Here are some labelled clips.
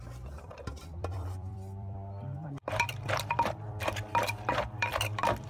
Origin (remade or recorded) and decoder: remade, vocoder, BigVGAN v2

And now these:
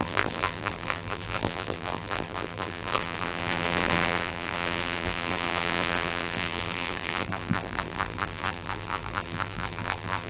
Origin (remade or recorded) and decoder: remade, vocoder, BigVGAN v2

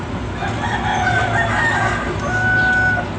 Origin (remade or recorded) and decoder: recorded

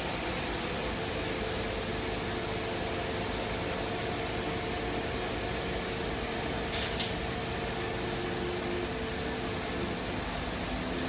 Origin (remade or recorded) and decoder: recorded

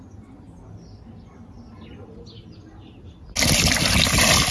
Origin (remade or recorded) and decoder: recorded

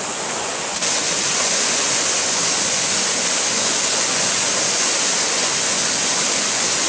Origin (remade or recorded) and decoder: remade, vocoder, Vocos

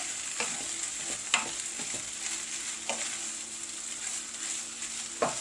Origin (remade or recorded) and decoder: recorded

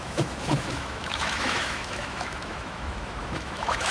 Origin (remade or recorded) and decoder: remade, autoencoder, DAC-VAE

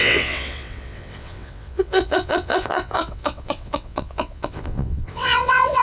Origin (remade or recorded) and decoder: remade, vocoder, WaveNeXt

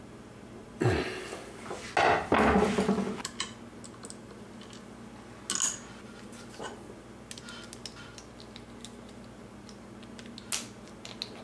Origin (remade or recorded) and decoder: recorded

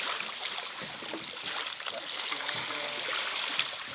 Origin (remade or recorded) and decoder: recorded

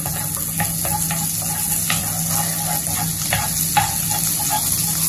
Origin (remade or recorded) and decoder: recorded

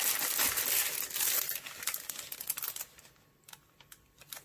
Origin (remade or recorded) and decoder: recorded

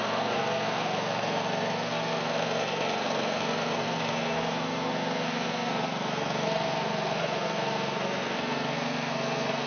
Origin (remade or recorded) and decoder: remade, codec, SNAC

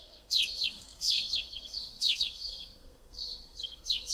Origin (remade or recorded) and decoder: remade, codec, SNAC